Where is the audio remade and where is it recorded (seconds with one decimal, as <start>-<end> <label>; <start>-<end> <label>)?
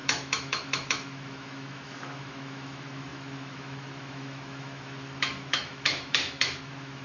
0.0-7.0 remade